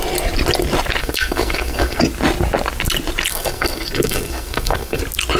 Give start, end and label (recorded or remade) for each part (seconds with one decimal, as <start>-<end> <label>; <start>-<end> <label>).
0.0-1.0 recorded; 1.0-2.0 remade; 2.0-3.3 recorded; 3.3-5.0 remade; 5.0-5.4 recorded